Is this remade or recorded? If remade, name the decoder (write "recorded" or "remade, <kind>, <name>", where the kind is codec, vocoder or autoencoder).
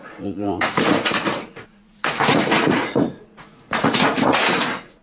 remade, vocoder, Vocos